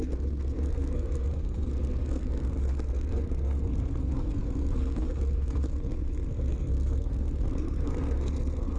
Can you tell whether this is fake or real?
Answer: fake